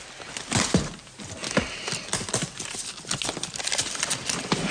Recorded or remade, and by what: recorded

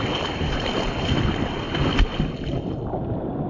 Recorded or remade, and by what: recorded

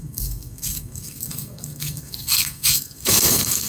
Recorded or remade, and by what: remade, codec, SNAC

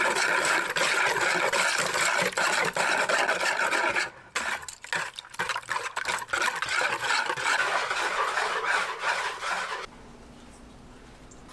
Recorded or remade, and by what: recorded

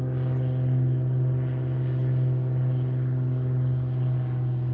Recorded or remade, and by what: recorded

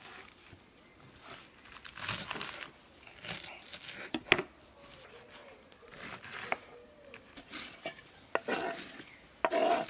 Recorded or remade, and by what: recorded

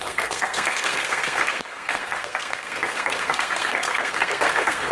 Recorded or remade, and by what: remade, codec, SNAC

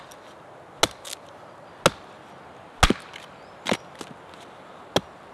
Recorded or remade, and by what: recorded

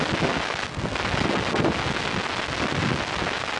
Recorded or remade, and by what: recorded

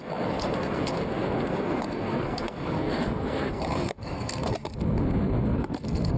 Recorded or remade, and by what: remade, codec, SNAC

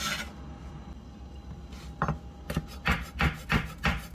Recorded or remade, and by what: recorded